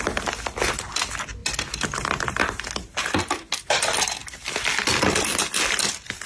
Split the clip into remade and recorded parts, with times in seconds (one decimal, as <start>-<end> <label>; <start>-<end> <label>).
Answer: 0.0-6.3 recorded